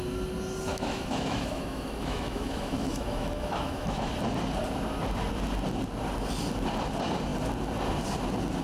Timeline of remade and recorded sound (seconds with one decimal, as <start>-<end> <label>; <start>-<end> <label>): 0.0-0.7 recorded; 0.7-4.1 remade; 4.1-8.6 recorded